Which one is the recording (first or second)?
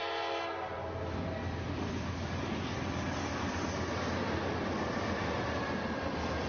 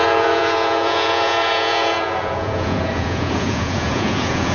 first